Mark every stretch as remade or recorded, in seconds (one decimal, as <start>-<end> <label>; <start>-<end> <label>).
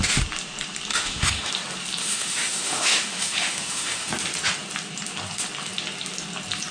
0.0-0.9 recorded; 0.9-1.5 remade; 1.5-2.0 recorded; 2.0-4.1 remade; 4.1-6.7 recorded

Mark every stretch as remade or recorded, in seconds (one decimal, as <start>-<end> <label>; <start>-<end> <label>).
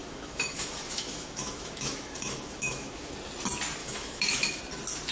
0.0-3.1 remade; 3.1-3.8 recorded; 3.8-4.6 remade; 4.6-5.1 recorded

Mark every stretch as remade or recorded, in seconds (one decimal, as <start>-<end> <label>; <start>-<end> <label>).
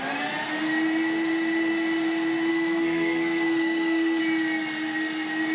0.0-2.5 recorded; 2.5-4.2 remade; 4.2-5.5 recorded